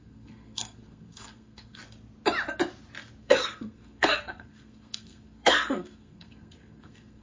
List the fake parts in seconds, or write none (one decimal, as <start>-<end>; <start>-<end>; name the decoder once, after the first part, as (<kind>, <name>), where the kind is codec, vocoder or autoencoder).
0.0-1.8 (codec, SNAC); 3.2-7.2